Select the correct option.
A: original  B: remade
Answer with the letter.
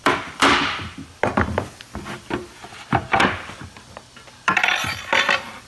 B